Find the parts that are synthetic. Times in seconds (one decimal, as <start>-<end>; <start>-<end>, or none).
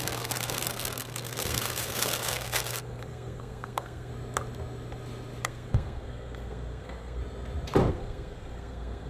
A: 0.0-4.1; 5.4-7.2; 7.9-9.1